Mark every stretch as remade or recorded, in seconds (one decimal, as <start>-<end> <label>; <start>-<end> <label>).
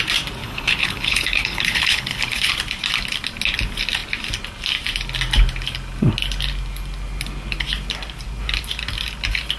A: 0.0-0.4 recorded; 0.4-2.6 remade; 2.6-9.6 recorded